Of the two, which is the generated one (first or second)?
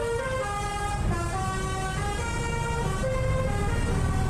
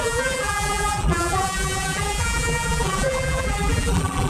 second